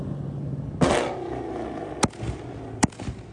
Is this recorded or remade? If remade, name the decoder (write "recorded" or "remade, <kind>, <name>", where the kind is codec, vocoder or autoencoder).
recorded